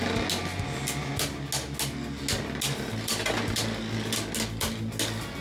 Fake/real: real